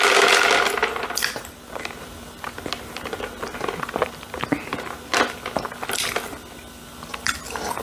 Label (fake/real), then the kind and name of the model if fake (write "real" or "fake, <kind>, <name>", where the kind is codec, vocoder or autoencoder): real